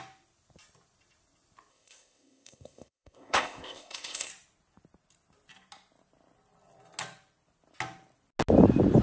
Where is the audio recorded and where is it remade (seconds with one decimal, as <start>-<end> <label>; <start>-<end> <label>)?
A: 0.0-1.7 recorded; 1.7-4.3 remade; 4.3-9.0 recorded